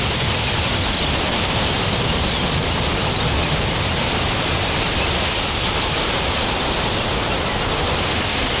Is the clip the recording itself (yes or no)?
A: yes